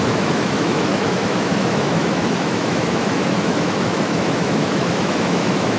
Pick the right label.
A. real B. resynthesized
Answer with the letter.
B